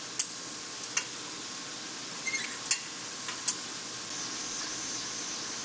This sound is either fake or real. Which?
real